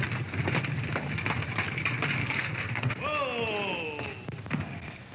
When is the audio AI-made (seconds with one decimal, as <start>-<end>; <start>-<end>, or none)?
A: 2.2-2.9